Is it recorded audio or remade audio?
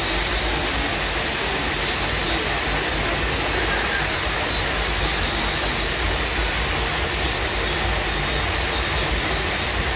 recorded